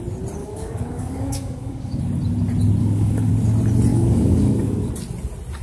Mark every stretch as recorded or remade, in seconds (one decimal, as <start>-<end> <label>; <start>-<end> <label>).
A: 0.0-0.4 recorded; 0.4-2.0 remade; 2.0-2.8 recorded; 2.8-3.3 remade; 3.3-3.9 recorded; 3.9-4.9 remade; 4.9-5.6 recorded